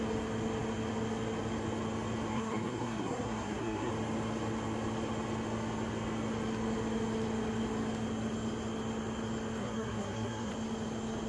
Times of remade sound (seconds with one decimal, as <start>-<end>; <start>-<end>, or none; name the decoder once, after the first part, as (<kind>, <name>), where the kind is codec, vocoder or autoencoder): 2.3-3.9 (codec, SNAC); 9.6-10.5